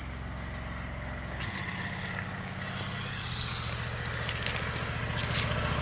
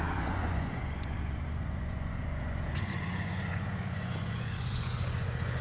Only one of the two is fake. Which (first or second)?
second